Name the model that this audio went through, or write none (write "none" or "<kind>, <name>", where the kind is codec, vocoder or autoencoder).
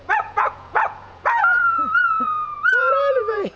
vocoder, Vocos